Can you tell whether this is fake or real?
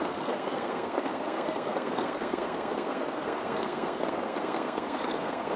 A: fake